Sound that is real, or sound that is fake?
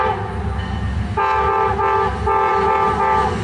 real